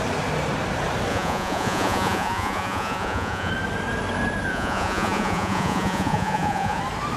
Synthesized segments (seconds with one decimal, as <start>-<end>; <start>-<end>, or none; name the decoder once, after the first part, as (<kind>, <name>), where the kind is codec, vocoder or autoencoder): 1.1-3.5 (vocoder, Vocos); 4.5-6.8